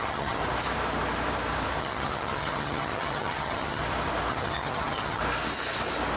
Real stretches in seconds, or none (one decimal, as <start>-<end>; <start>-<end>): 0.4-1.8; 3.8-4.3; 5.2-6.2